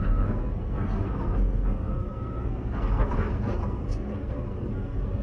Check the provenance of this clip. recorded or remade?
remade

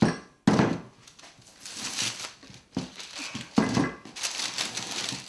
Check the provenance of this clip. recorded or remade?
recorded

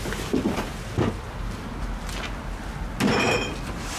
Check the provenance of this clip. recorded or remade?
recorded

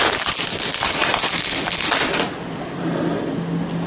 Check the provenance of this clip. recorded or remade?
recorded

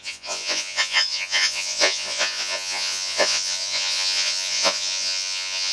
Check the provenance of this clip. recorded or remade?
remade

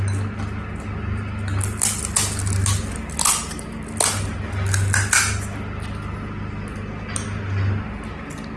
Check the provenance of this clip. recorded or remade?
recorded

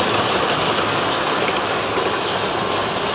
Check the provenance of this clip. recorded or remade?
recorded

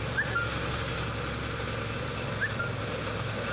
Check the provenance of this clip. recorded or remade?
recorded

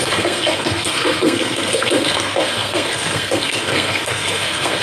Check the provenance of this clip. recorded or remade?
remade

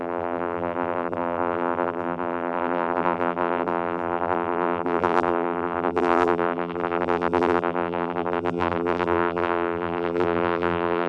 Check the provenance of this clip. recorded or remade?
remade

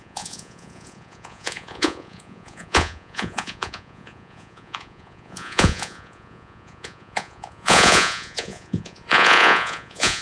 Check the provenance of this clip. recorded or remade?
remade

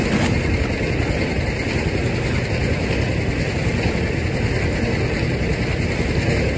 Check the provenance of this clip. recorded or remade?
recorded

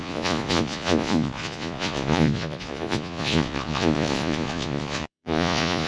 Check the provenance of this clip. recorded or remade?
remade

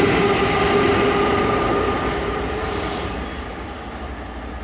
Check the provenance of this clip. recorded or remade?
recorded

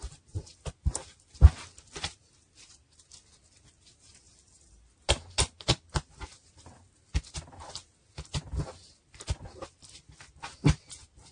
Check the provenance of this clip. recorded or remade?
recorded